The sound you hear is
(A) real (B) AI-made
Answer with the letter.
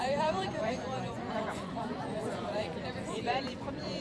B